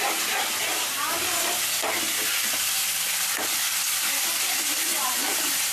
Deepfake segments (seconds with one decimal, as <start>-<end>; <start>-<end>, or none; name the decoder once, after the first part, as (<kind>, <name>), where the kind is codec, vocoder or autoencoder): 4.9-5.7 (vocoder, BigVGAN v2)